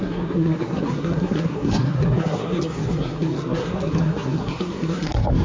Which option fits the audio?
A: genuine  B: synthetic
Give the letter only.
B